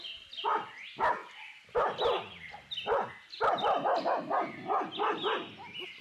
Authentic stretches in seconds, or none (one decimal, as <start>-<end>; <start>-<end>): 0.0-1.2; 3.1-6.0